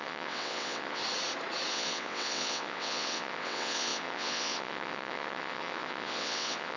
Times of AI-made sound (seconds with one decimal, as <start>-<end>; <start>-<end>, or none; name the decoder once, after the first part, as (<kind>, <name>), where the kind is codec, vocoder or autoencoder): 0.0-1.0 (vocoder, WaveNeXt); 1.7-6.8